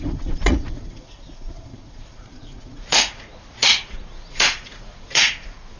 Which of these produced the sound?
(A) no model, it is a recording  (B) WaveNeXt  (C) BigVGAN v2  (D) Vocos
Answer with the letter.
D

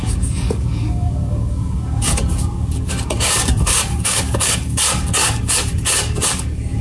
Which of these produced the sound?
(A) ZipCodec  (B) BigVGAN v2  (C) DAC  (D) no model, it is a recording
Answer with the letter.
C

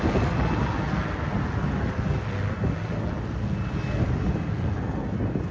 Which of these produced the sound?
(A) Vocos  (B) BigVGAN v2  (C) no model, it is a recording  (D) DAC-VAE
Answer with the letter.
C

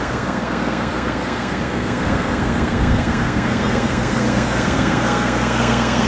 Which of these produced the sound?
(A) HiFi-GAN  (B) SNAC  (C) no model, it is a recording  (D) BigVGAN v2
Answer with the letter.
B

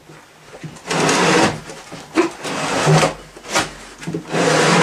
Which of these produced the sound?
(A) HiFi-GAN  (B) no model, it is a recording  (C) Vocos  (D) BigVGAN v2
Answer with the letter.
B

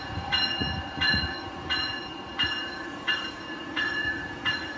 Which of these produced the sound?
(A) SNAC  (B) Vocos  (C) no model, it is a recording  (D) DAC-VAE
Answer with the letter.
B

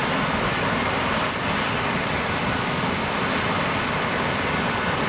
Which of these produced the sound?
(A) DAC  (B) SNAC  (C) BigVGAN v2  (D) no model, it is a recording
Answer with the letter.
C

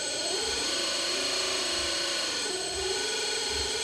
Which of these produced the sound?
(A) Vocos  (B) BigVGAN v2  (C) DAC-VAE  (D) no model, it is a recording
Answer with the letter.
B